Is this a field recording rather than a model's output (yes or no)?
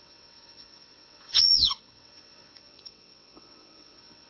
no